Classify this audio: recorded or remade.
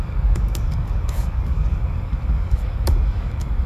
remade